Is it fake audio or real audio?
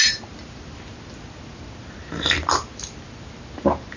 real